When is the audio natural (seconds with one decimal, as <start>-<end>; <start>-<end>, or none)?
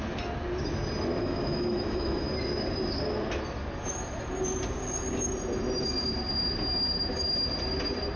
0.0-1.2; 2.3-8.2